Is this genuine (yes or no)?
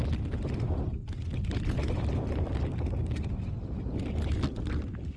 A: yes